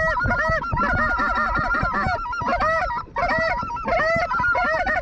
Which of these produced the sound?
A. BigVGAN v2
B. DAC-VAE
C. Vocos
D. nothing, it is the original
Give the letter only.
D